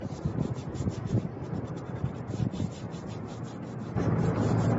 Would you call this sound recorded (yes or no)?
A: yes